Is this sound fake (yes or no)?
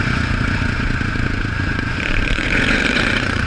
yes